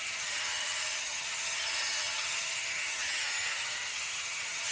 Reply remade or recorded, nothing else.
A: remade